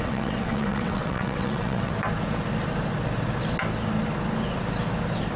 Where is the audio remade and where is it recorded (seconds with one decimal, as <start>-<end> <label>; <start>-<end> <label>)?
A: 0.0-1.9 remade; 1.9-5.4 recorded

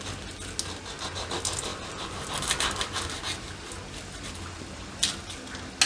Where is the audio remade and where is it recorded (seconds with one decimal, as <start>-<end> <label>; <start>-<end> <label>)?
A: 0.0-5.9 recorded

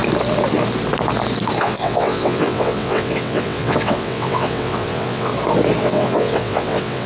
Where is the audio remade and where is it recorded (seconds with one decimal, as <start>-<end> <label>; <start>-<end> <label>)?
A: 0.0-1.6 recorded; 1.6-5.3 remade; 5.3-5.8 recorded; 5.8-7.1 remade

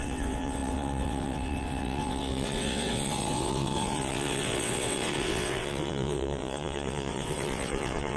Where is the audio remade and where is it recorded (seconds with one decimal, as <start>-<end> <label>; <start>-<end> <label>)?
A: 0.0-8.2 remade

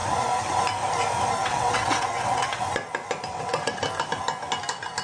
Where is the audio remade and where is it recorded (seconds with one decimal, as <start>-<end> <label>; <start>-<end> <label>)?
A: 0.0-1.4 recorded; 1.4-2.6 remade; 2.6-3.3 recorded; 3.3-3.8 remade; 3.8-5.0 recorded

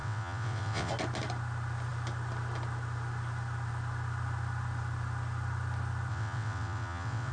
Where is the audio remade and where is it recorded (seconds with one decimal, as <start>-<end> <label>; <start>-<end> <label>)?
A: 0.0-0.9 remade; 0.9-6.1 recorded; 6.1-7.3 remade

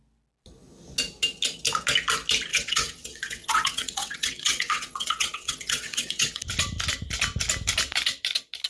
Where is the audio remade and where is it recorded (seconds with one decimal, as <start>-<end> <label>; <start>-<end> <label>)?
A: 0.0-2.5 recorded; 2.5-6.4 remade; 6.4-8.7 recorded

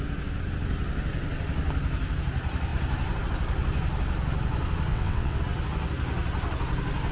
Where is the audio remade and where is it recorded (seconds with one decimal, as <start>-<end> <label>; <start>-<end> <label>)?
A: 0.0-4.9 recorded; 4.9-5.4 remade; 5.4-7.1 recorded